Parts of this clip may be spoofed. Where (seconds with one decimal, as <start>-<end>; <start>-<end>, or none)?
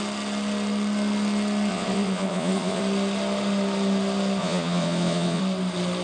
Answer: 1.7-2.8; 4.4-5.4